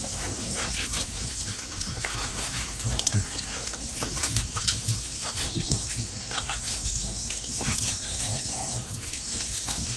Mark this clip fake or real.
fake